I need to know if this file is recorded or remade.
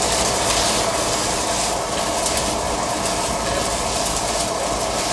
recorded